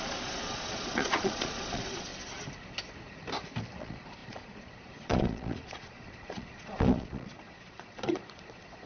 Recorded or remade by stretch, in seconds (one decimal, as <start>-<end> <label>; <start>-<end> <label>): 0.0-2.1 remade; 2.1-3.8 recorded; 3.8-8.9 remade